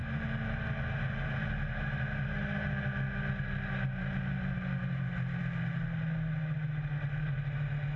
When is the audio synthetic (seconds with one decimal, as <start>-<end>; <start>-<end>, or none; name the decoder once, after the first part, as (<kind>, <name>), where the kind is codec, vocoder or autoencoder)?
none